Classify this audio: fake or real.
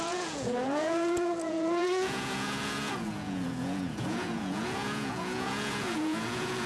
fake